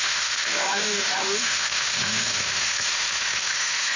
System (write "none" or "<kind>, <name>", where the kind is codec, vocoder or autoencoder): autoencoder, DAC-VAE